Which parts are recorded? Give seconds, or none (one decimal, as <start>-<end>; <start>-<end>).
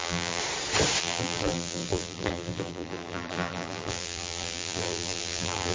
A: 0.4-1.0